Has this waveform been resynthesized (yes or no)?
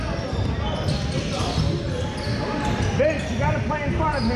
no